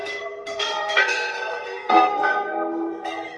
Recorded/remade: remade